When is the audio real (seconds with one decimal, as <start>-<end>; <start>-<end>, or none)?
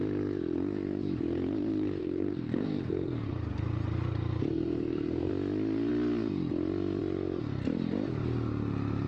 0.0-2.0; 3.3-4.5; 5.3-9.1